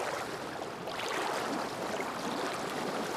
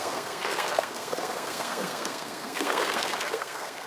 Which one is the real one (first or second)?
first